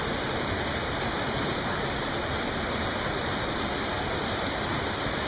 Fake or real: real